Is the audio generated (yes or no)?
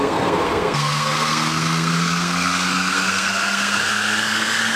yes